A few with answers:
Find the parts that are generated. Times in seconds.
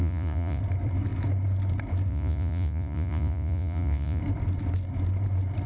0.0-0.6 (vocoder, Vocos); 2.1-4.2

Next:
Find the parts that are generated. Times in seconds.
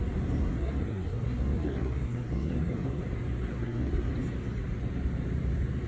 0.4-3.0 (codec, SNAC); 3.5-4.1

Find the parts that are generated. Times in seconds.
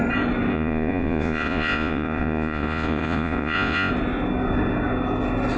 0.5-3.9 (vocoder, Vocos)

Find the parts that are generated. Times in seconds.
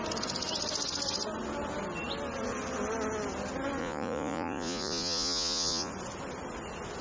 3.8-5.9 (vocoder, Vocos)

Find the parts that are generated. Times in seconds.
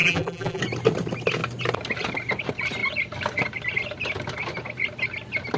0.0-0.6 (vocoder, BigVGAN v2)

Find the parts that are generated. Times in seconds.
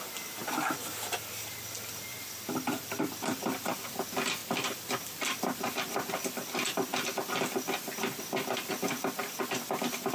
2.1-3.8 (vocoder, BigVGAN v2); 4.4-6.2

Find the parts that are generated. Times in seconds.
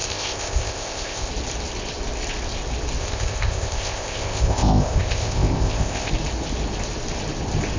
0.0-1.3 (codec, ZipCodec); 3.0-6.1